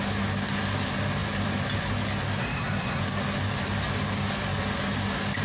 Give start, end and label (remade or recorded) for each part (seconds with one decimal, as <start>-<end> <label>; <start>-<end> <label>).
0.0-2.4 recorded; 2.4-3.0 remade; 3.0-5.4 recorded